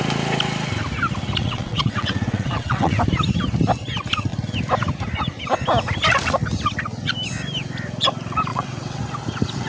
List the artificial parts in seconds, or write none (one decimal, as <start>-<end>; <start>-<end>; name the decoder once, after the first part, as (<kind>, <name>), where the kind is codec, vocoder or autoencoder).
1.4-3.0 (vocoder, WaveNeXt); 8.5-9.0